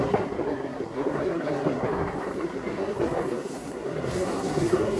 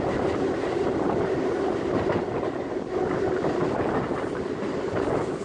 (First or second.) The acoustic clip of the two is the second